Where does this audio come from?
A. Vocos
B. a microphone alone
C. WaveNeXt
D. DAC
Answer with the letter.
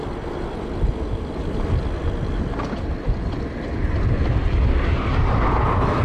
B